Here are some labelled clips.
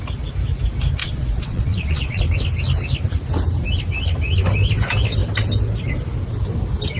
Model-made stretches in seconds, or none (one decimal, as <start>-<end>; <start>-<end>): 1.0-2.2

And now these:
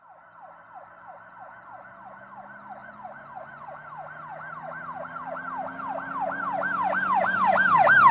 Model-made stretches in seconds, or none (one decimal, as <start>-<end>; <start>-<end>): 2.8-3.7

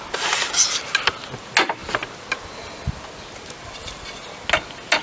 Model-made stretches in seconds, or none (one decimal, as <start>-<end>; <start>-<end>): none

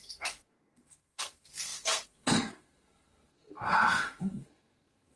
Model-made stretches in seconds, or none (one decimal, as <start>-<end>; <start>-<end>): 0.0-5.2